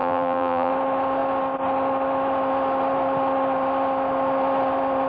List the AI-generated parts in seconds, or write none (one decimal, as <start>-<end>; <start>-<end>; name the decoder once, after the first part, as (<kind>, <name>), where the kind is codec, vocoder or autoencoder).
0.0-0.7 (vocoder, BigVGAN v2)